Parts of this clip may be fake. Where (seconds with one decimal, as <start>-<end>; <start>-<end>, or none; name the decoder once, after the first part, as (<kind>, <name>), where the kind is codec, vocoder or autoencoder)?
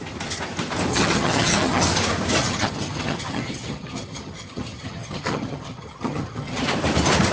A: 0.9-1.9 (vocoder, HiFi-GAN); 2.4-6.6